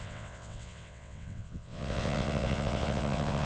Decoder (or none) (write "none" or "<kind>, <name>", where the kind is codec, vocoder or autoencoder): vocoder, WaveNeXt